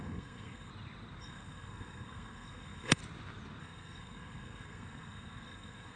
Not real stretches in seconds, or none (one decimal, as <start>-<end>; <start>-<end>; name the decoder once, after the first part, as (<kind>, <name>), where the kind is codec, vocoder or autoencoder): 0.0-0.7 (codec, SNAC); 1.2-3.0; 3.6-6.0